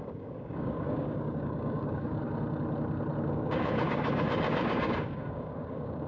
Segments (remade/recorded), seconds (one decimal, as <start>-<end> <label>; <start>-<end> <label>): 0.0-2.2 remade; 2.2-3.2 recorded; 3.2-6.1 remade